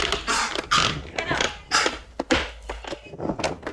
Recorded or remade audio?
recorded